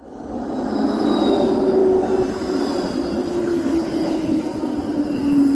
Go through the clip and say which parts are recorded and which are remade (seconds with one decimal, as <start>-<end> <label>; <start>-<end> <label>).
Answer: 0.0-3.2 recorded; 3.2-4.4 remade; 4.4-5.5 recorded